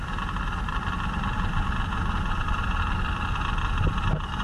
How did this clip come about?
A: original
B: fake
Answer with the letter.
A